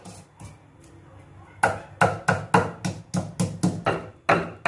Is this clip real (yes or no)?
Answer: yes